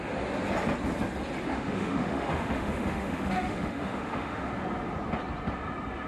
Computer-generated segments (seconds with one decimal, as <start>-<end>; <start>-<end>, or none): 1.5-4.5